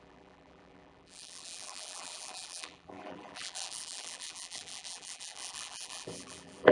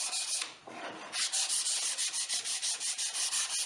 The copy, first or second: first